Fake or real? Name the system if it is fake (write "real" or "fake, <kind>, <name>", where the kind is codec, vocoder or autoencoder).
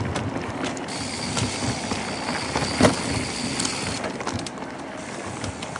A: real